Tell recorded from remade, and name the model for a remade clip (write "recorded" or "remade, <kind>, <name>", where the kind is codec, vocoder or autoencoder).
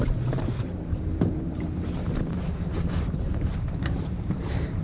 remade, vocoder, BigVGAN v2